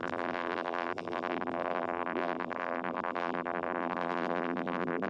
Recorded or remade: remade